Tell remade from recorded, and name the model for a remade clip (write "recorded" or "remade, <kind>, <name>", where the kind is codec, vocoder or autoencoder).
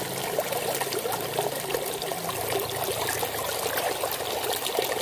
recorded